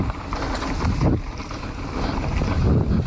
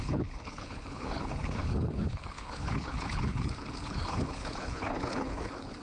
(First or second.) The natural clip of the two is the first